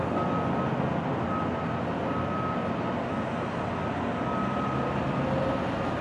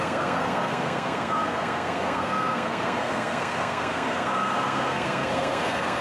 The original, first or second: first